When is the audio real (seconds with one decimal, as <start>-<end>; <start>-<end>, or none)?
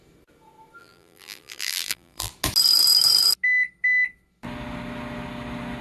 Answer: 0.0-0.8; 2.3-5.8